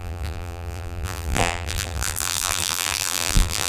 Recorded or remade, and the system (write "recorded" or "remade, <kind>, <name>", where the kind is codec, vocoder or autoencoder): remade, vocoder, BigVGAN v2